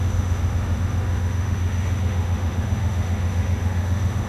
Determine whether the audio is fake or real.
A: fake